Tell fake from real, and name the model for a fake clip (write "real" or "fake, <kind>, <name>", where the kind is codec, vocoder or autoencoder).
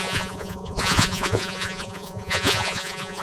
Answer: fake, vocoder, Vocos